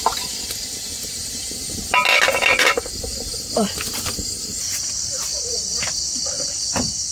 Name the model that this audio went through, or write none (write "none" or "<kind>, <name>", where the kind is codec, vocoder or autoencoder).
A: none